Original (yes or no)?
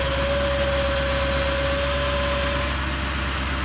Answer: yes